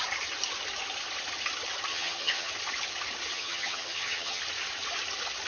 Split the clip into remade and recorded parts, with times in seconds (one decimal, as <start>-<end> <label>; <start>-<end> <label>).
0.0-1.9 recorded; 1.9-2.5 remade; 2.5-3.3 recorded; 3.3-4.4 remade; 4.4-5.5 recorded